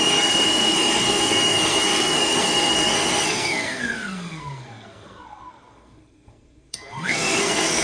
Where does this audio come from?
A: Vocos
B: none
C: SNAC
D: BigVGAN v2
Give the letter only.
C